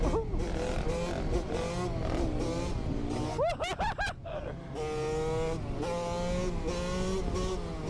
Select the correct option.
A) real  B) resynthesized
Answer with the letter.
A